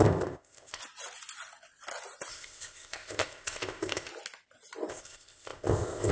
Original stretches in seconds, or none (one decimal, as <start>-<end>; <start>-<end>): 0.8-2.3; 4.1-4.9